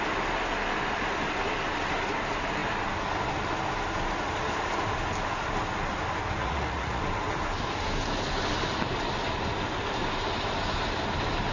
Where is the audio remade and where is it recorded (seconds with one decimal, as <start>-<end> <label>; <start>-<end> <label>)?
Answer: 0.0-6.4 recorded; 6.4-7.0 remade; 7.0-11.5 recorded